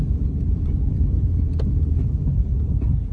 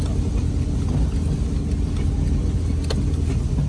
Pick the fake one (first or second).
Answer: first